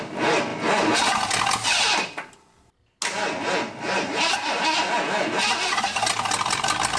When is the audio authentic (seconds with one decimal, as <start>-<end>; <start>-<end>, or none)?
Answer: 0.0-7.0